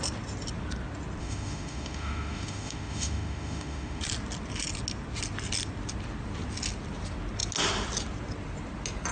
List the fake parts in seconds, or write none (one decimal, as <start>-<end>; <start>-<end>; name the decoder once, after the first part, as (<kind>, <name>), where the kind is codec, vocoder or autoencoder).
1.2-4.0 (autoencoder, DAC-VAE)